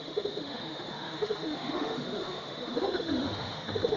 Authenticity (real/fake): fake